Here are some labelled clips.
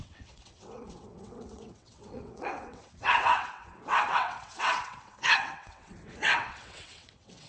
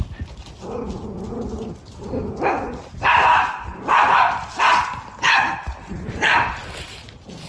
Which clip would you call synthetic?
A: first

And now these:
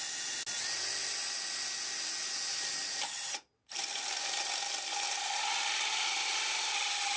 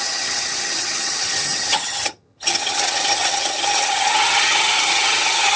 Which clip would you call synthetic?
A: second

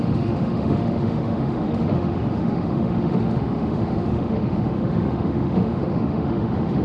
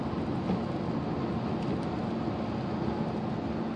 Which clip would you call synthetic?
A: first